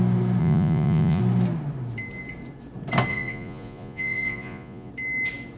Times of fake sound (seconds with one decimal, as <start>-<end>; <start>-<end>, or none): 0.4-1.2; 3.1-4.9